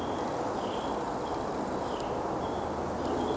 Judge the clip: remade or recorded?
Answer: recorded